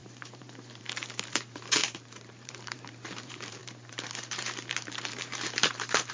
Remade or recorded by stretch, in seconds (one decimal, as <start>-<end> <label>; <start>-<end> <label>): 0.0-6.1 remade